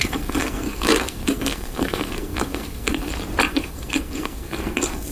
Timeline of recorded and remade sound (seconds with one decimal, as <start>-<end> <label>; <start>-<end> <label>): 0.0-3.1 remade; 3.1-3.5 recorded; 3.5-5.1 remade